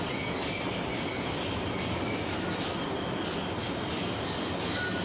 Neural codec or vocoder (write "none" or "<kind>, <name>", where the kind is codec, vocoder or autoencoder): none